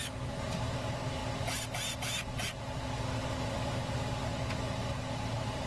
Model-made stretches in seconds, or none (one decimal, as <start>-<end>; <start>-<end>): none